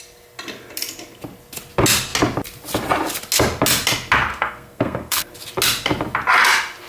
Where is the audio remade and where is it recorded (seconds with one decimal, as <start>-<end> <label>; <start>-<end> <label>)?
0.0-4.3 recorded; 4.3-5.3 remade; 5.3-6.9 recorded